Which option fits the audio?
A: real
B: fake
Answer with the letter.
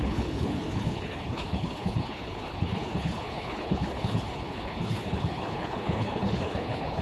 B